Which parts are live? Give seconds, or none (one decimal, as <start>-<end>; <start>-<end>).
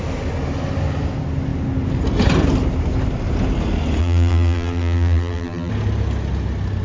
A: 0.0-4.0; 5.7-6.8